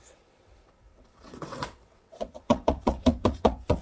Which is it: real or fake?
fake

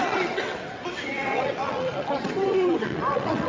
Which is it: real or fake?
fake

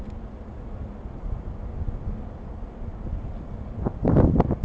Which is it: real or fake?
real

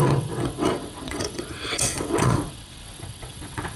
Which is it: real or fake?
fake